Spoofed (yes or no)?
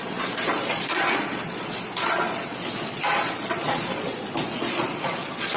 yes